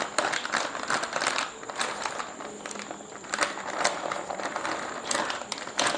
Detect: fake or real real